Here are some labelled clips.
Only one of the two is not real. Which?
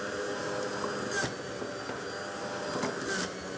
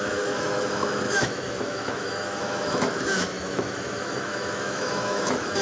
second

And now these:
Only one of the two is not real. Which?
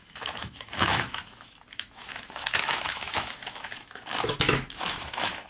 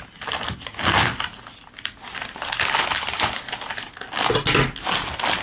first